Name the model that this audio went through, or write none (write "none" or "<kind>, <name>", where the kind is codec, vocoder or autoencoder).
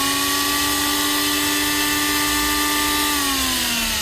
none